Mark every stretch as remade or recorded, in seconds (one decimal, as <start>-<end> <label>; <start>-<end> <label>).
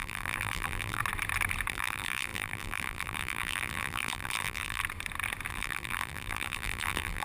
0.0-1.0 remade; 1.0-1.7 recorded; 1.7-4.8 remade; 4.8-5.5 recorded; 5.5-7.2 remade